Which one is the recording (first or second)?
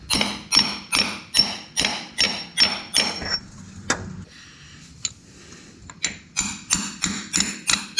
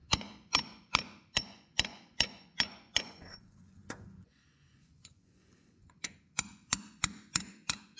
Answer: first